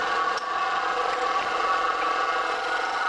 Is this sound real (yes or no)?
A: no